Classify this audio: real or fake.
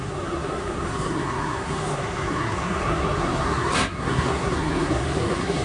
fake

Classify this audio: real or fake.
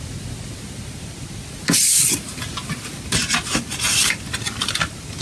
real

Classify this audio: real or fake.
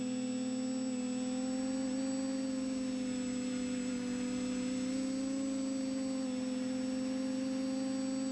real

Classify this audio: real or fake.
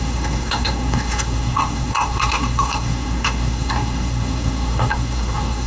fake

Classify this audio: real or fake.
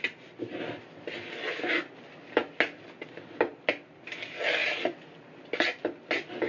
real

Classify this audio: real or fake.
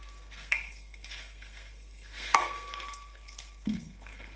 fake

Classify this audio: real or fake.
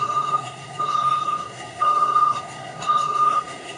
fake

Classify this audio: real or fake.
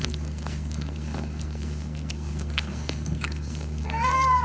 fake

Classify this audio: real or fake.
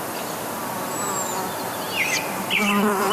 real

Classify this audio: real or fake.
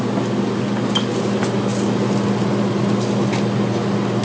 real